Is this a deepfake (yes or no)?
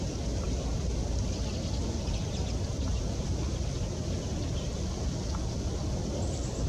no